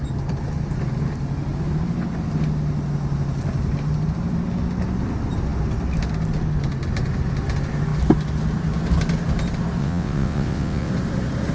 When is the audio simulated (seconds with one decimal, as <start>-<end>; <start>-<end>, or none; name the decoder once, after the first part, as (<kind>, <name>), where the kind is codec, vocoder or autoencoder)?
9.8-10.9 (vocoder, WaveNeXt)